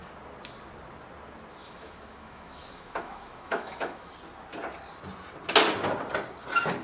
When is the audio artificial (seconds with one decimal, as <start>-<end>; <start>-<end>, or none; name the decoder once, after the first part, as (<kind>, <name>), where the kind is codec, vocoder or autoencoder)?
1.6-4.1 (autoencoder, DAC-VAE)